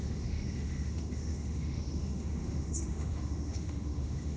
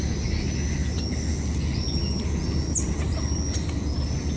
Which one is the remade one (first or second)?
first